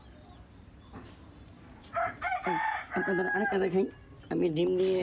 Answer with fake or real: real